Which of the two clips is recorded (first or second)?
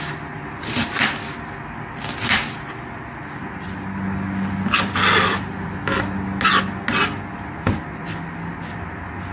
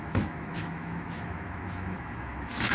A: first